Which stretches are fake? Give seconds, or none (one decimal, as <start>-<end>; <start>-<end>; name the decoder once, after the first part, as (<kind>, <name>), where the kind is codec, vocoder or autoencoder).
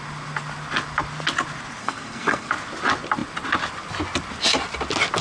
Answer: 1.8-2.5 (codec, SNAC)